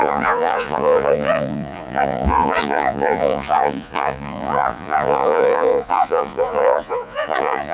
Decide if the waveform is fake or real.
fake